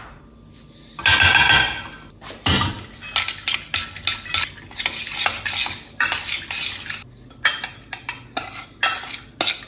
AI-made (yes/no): no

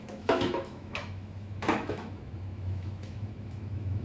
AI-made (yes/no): yes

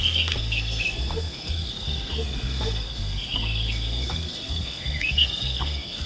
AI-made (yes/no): yes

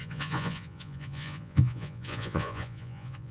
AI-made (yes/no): yes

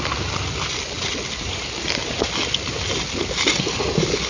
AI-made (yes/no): no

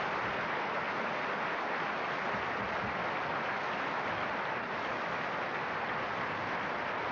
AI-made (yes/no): no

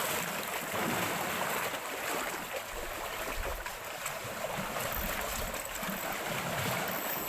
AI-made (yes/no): no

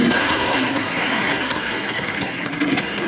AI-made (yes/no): yes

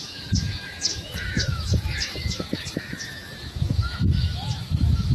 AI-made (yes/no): yes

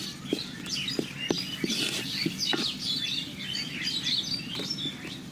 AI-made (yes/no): no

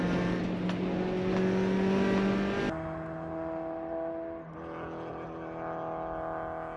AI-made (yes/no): no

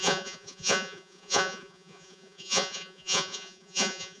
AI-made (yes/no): yes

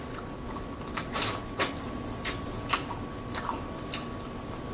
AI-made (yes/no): no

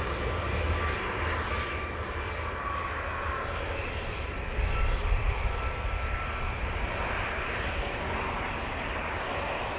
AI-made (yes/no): no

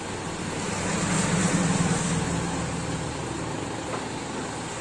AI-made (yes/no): no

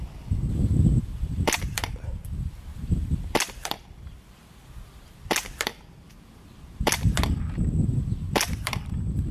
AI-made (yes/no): yes